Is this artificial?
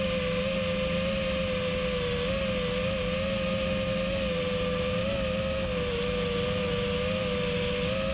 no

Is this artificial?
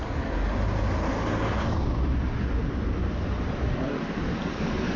no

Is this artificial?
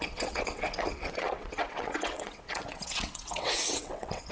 yes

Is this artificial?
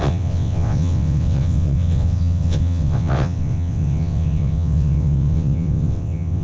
yes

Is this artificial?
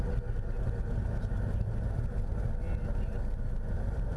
no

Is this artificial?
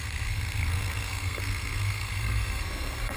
yes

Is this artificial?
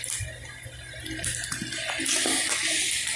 no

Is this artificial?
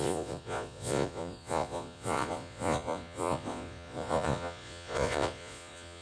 yes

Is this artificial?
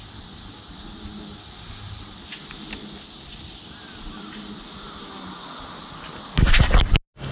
no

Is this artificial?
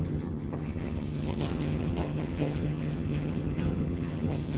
yes